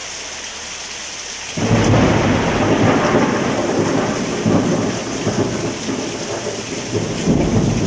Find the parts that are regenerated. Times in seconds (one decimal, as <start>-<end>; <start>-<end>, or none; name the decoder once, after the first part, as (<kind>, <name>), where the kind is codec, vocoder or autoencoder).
none

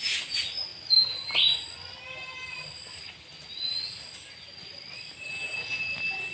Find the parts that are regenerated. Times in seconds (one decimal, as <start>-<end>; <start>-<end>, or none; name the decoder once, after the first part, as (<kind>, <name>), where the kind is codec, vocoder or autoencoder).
none

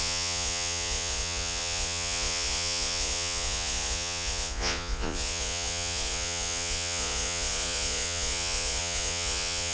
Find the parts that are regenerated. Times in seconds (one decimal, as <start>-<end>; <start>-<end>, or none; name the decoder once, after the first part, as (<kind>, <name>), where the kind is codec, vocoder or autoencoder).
0.0-9.7 (vocoder, Vocos)

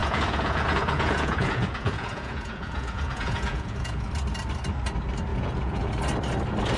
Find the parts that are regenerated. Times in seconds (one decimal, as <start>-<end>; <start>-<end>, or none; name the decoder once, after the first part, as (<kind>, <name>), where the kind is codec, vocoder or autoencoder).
0.0-4.1 (vocoder, Vocos); 5.3-5.9

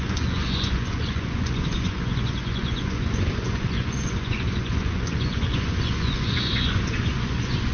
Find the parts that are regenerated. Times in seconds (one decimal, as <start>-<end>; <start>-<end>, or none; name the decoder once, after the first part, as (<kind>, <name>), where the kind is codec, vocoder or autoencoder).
0.0-7.7 (vocoder, Vocos)

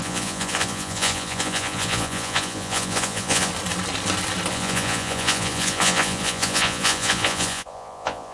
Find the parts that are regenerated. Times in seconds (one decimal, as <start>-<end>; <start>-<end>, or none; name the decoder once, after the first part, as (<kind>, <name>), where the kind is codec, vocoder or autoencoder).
0.0-3.5 (vocoder, Vocos); 4.5-8.3

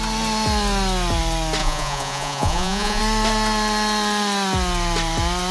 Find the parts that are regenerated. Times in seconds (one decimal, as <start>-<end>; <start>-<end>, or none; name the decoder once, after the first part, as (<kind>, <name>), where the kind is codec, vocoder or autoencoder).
1.6-3.0 (vocoder, Vocos)

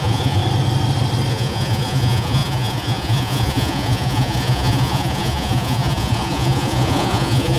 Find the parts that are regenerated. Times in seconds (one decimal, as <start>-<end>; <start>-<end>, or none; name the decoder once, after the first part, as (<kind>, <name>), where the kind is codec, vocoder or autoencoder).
0.0-0.4 (vocoder, Vocos); 1.3-7.6